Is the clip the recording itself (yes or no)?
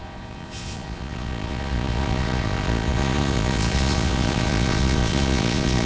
no